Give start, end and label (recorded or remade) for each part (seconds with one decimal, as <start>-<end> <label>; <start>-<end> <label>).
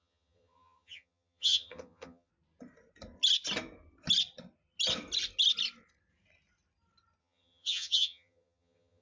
0.0-2.3 remade; 2.3-7.2 recorded; 7.2-9.0 remade